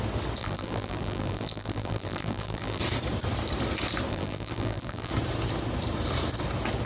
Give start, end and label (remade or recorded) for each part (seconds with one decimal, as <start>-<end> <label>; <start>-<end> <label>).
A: 0.0-0.4 recorded; 0.4-2.8 remade; 2.8-4.1 recorded; 4.1-5.1 remade; 5.1-6.9 recorded